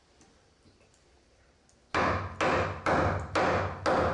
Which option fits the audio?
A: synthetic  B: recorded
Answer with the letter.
B